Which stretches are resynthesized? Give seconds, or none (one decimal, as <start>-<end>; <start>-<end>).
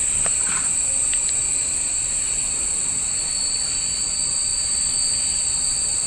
none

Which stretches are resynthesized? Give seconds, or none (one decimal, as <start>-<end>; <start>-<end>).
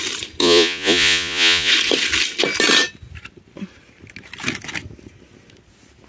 0.4-1.7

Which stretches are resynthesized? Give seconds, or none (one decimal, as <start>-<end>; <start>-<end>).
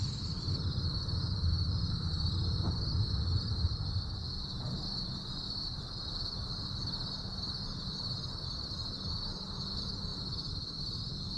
4.2-4.8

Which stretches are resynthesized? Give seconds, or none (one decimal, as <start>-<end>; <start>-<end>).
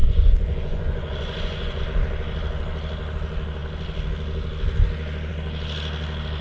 0.0-1.8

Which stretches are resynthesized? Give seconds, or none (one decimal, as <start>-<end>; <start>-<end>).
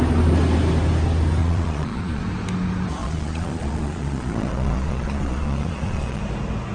1.4-2.2; 3.0-6.2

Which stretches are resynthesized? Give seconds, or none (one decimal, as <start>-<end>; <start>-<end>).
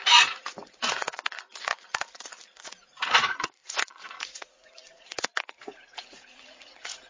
0.0-7.1